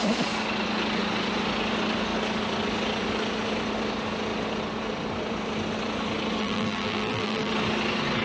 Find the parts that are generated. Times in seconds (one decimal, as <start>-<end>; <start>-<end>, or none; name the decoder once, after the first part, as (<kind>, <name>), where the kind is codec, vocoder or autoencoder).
6.4-7.5 (vocoder, BigVGAN v2)